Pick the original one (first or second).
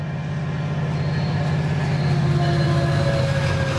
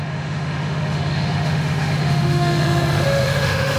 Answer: first